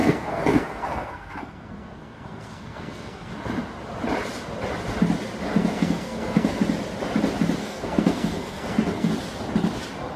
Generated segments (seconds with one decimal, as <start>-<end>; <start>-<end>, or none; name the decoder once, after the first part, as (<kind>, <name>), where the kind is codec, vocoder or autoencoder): 0.0-3.3 (codec, SNAC); 5.6-6.6; 7.6-9.1